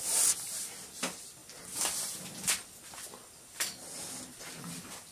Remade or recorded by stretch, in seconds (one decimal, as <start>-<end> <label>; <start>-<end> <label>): 0.0-5.1 recorded